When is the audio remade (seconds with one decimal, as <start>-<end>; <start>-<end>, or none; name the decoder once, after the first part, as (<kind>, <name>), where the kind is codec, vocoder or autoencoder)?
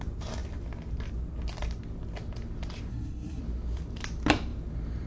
2.9-3.4 (codec, SNAC)